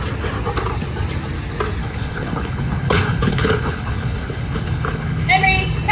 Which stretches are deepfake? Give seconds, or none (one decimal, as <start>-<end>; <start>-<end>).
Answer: 1.8-5.3